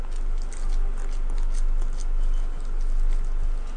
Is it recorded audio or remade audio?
recorded